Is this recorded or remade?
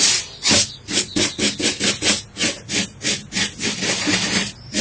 recorded